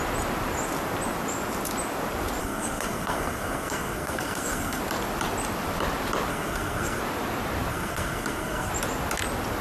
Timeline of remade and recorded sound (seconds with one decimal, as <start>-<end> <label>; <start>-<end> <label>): 0.0-2.4 recorded; 2.4-4.8 remade; 4.8-6.3 recorded; 6.3-7.0 remade; 7.0-7.7 recorded; 7.7-8.7 remade; 8.7-9.6 recorded